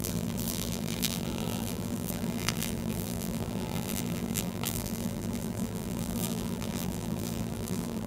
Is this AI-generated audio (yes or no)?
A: yes